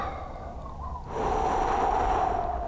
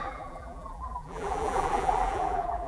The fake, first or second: second